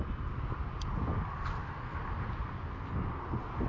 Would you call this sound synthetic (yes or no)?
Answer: no